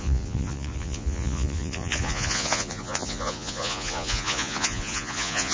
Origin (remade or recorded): remade